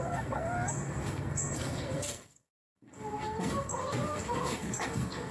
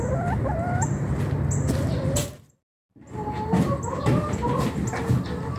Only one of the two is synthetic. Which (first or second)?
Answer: first